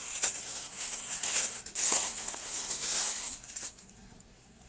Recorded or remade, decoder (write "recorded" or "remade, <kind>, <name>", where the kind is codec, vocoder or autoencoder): remade, codec, SNAC